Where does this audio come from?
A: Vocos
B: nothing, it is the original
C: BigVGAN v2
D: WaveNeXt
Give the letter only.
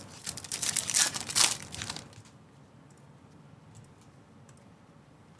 B